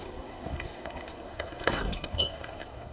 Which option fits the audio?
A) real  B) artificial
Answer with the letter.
B